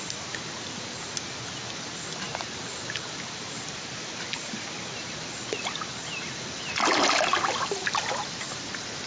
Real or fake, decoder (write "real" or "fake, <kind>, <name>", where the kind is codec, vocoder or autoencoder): real